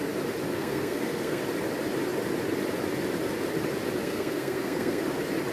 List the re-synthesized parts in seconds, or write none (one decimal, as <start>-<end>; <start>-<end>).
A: 0.5-1.4; 4.0-5.0